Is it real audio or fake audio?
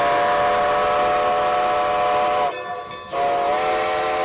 real